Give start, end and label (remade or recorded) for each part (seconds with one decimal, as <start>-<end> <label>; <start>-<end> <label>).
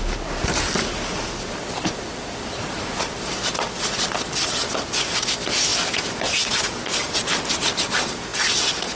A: 0.0-5.7 remade; 5.7-7.7 recorded; 7.7-9.0 remade